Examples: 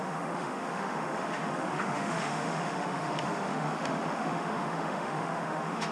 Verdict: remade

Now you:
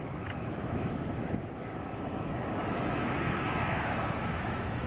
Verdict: remade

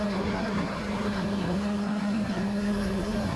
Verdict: remade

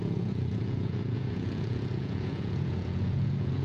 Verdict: remade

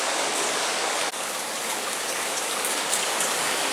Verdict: remade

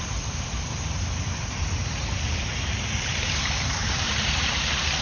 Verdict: remade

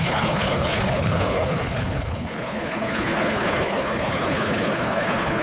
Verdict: remade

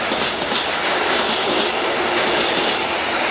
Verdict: recorded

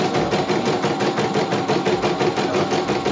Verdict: recorded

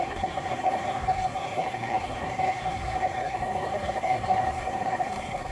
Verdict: remade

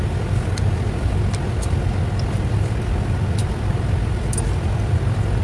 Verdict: recorded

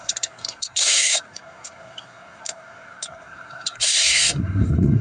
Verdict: remade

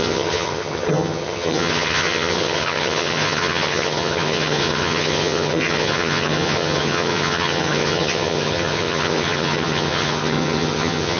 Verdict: remade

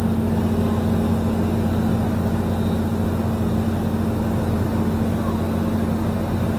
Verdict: recorded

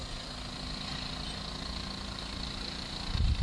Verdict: recorded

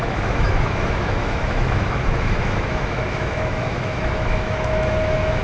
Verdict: remade